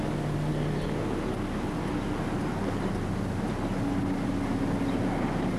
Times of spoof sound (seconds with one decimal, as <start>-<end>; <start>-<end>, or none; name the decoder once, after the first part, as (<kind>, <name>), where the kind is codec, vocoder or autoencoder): none